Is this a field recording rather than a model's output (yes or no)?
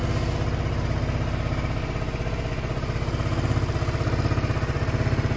yes